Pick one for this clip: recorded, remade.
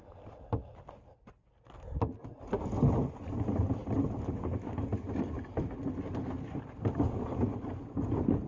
recorded